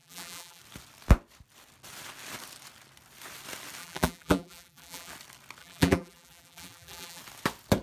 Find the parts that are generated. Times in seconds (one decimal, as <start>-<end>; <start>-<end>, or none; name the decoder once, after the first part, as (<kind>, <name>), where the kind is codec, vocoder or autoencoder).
0.0-0.6 (vocoder, BigVGAN v2); 3.8-5.1; 5.6-7.2

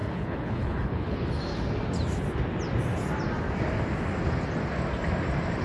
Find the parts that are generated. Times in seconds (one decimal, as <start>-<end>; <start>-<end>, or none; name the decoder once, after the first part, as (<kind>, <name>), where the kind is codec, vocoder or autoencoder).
0.0-1.3 (codec, HILCodec)

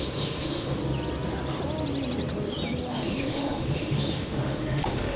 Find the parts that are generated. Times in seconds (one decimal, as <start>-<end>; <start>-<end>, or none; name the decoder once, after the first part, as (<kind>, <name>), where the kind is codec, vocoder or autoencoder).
0.0-0.8 (autoencoder, DAC-VAE); 2.9-5.2

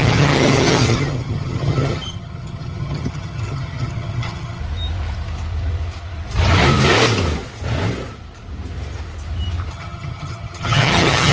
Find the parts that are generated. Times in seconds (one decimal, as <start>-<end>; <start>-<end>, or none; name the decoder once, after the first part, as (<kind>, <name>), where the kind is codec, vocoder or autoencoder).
0.0-4.6 (vocoder, HiFi-GAN); 9.7-11.3

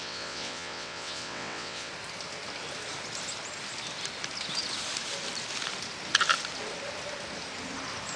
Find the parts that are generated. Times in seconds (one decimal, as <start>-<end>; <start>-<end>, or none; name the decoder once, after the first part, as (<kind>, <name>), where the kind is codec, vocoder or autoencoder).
0.0-1.9 (vocoder, WaveNeXt)